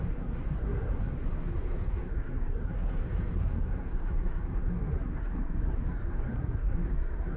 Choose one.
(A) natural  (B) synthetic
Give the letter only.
B